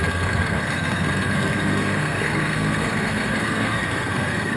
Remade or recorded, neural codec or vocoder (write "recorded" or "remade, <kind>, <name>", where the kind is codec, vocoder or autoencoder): remade, codec, SNAC